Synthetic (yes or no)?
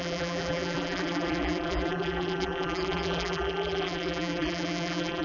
yes